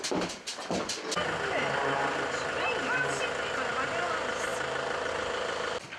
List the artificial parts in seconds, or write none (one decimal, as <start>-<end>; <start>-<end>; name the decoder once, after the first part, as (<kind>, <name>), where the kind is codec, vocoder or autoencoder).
none